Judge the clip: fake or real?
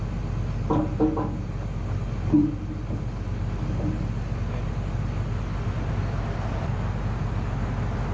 real